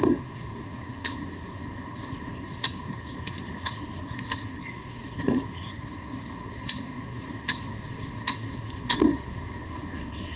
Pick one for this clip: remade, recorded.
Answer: remade